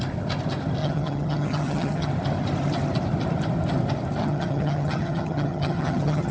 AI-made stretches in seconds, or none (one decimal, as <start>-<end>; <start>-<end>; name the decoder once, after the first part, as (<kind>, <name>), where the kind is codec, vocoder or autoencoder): 0.8-2.1 (vocoder, HiFi-GAN); 4.2-6.3